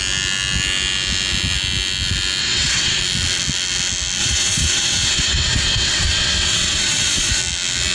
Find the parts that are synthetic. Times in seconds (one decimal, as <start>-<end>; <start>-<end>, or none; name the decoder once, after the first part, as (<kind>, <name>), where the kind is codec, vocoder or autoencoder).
2.4-3.0 (vocoder, WaveNeXt); 4.2-7.4